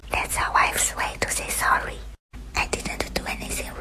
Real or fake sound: real